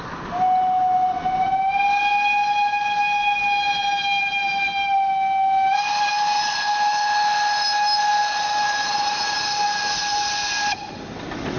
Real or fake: real